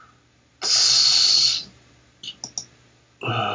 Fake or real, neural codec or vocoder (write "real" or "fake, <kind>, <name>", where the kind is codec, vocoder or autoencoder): real